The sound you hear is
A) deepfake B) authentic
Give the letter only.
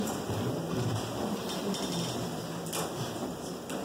B